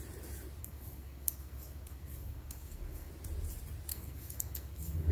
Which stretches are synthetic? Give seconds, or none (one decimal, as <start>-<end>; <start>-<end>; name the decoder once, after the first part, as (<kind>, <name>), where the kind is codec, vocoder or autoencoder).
0.6-3.1 (codec, SNAC); 3.9-5.1